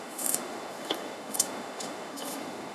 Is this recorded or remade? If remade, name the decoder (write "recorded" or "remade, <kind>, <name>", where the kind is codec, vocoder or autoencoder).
remade, autoencoder, DAC-VAE